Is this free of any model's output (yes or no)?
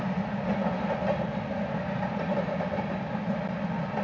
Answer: yes